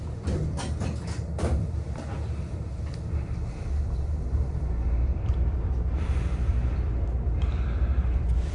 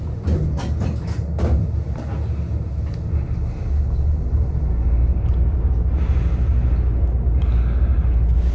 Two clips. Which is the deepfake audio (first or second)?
first